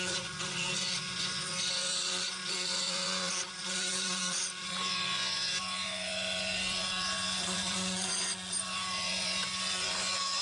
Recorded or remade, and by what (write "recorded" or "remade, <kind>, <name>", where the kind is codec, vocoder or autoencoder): remade, vocoder, Vocos